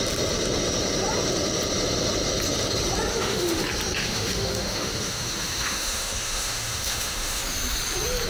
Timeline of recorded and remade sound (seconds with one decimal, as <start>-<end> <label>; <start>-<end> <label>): 0.0-3.1 recorded; 3.1-3.6 remade; 3.6-4.0 recorded; 4.0-7.4 remade; 7.4-8.3 recorded